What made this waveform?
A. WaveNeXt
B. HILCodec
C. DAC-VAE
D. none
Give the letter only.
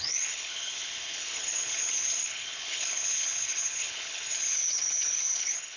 B